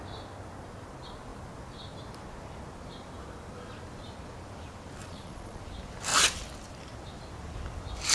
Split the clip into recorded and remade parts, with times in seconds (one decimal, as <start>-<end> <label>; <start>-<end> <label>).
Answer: 0.0-5.0 recorded; 5.0-5.6 remade; 5.6-8.1 recorded